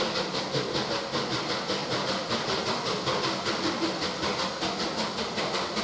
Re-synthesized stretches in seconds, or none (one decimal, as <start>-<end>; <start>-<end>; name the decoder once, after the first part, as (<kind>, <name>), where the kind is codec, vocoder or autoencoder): none